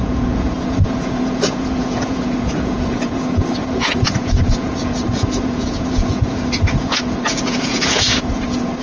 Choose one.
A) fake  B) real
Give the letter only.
A